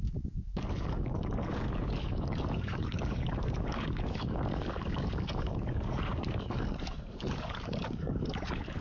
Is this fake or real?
fake